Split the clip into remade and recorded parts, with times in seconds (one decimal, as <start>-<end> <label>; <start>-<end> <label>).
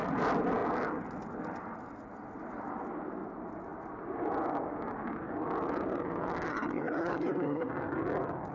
0.0-6.5 recorded; 6.5-7.7 remade; 7.7-8.5 recorded